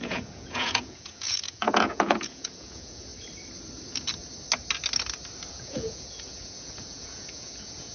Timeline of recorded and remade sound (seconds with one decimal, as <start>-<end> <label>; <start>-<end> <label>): 0.0-3.1 remade; 3.1-5.5 recorded; 5.5-7.9 remade